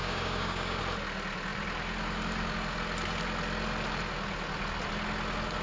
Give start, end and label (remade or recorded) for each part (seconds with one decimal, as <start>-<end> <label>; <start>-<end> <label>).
0.0-0.8 remade; 0.8-5.6 recorded